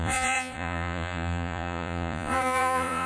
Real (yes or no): no